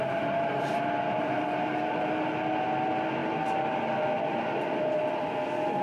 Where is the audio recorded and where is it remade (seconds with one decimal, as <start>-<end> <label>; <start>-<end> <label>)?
0.0-5.8 recorded